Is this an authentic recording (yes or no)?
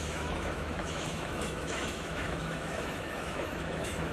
no